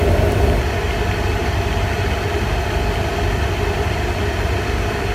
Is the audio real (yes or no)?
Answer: yes